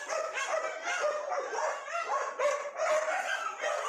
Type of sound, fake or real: real